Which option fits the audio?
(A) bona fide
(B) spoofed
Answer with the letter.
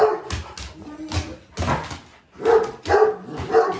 A